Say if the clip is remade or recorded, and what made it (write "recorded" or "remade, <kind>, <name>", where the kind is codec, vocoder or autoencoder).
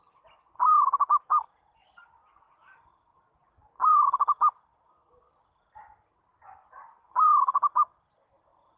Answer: recorded